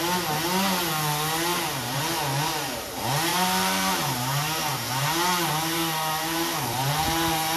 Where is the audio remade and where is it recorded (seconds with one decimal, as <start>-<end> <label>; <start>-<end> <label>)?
0.0-1.5 recorded; 1.5-2.0 remade; 2.0-3.3 recorded; 3.3-7.6 remade